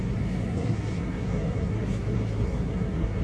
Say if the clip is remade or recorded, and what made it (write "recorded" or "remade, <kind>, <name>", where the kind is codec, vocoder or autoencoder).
remade, codec, SNAC